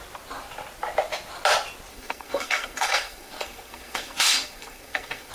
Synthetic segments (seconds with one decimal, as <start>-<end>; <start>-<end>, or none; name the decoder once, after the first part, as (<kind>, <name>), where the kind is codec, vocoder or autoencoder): 1.9-5.3 (codec, SNAC)